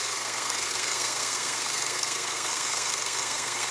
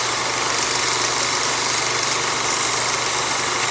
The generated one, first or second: first